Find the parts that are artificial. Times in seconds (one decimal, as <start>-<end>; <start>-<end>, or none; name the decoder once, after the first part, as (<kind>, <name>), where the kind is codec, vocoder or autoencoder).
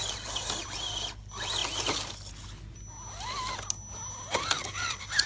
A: 4.6-5.3 (vocoder, BigVGAN v2)